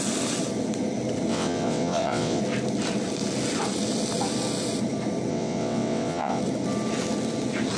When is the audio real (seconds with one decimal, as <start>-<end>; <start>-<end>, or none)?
0.0-1.3; 2.4-5.3; 6.4-7.8